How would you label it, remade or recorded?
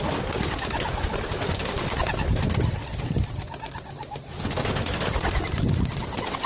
recorded